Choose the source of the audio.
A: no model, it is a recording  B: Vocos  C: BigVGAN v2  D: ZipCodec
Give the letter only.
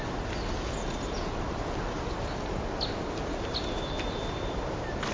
A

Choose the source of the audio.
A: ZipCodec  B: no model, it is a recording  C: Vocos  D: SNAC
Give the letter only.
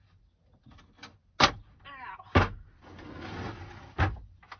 B